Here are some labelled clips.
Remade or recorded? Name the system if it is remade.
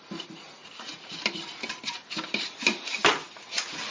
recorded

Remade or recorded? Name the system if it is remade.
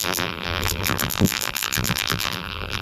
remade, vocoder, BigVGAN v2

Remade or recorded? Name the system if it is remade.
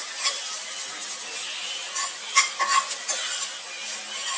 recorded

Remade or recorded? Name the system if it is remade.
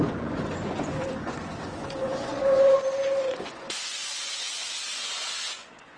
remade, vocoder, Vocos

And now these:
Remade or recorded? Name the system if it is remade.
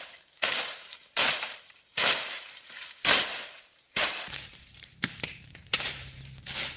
remade, vocoder, BigVGAN v2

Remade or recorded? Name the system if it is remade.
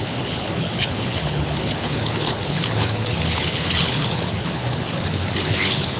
remade, codec, HILCodec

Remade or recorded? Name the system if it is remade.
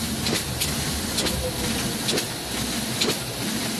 recorded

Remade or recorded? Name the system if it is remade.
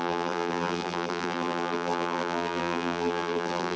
remade, vocoder, BigVGAN v2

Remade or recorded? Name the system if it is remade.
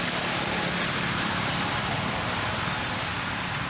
recorded